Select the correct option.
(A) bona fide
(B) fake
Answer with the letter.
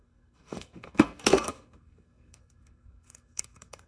B